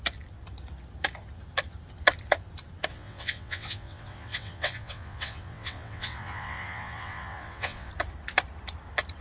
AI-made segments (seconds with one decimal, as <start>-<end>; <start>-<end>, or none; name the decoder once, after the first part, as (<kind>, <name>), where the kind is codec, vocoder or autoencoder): 2.9-7.9 (vocoder, WaveNeXt)